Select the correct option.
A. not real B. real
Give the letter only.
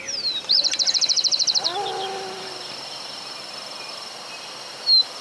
B